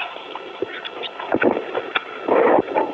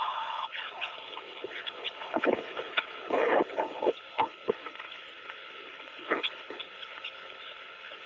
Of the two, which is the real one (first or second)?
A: first